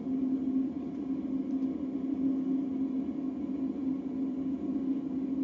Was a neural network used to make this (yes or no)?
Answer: no